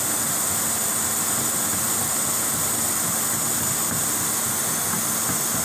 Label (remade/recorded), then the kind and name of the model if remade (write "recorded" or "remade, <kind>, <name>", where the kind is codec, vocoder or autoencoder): recorded